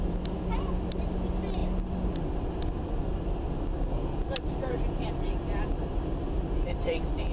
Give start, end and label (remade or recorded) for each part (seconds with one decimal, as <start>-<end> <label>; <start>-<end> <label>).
0.0-7.3 recorded